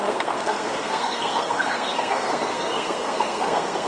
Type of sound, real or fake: fake